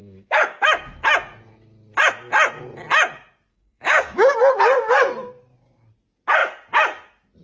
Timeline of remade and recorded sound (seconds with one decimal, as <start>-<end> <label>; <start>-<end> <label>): 0.0-0.6 remade; 0.6-3.5 recorded; 3.5-4.4 remade; 4.4-7.4 recorded